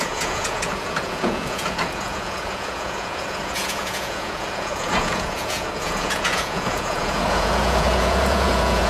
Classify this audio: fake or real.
fake